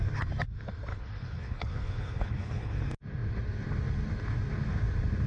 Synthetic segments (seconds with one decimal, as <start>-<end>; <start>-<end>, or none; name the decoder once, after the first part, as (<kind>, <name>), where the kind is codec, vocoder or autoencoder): 0.9-2.8 (codec, HILCodec)